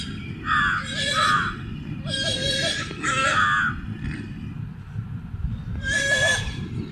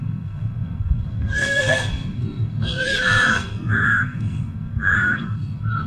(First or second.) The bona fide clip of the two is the first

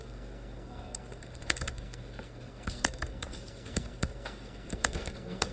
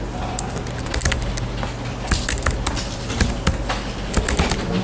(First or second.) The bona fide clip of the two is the second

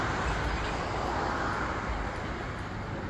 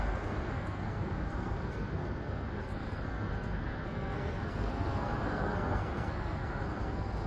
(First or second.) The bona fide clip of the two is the first